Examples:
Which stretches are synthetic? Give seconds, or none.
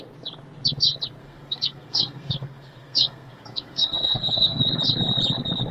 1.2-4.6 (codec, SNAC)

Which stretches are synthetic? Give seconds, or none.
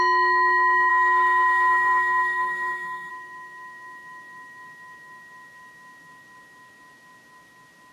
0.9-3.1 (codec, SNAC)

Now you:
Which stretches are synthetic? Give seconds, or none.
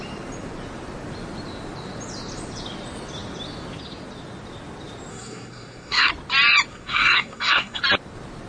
5.1-6.1 (codec, SNAC); 6.7-7.8